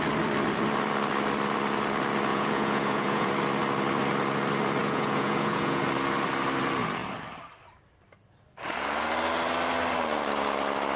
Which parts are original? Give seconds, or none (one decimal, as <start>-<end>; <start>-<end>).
0.0-2.3; 3.3-4.8; 5.8-11.0